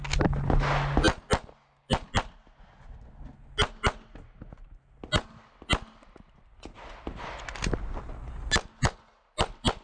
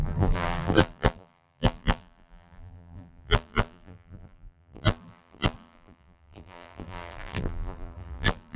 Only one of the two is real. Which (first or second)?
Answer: first